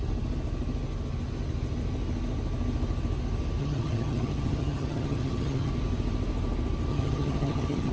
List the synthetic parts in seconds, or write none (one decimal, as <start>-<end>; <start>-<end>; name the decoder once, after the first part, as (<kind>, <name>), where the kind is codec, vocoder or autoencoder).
3.6-5.7 (vocoder, HiFi-GAN); 6.9-7.9